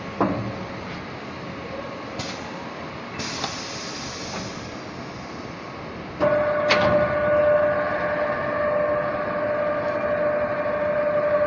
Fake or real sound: real